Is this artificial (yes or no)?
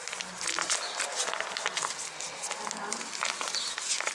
no